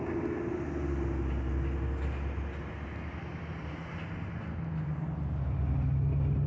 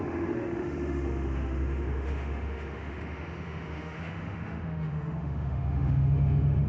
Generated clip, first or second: second